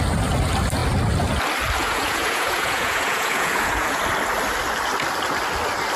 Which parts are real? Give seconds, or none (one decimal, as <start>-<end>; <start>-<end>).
0.0-1.8; 4.0-6.0